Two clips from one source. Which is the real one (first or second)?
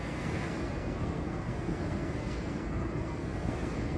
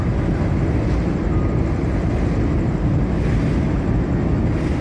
second